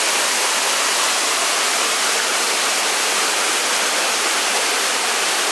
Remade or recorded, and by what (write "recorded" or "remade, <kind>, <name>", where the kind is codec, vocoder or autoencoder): remade, vocoder, BigVGAN v2